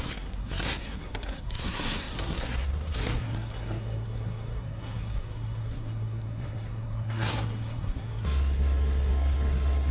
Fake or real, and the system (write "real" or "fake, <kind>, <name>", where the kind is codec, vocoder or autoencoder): fake, codec, SNAC